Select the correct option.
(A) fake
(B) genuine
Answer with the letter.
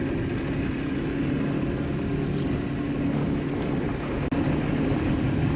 B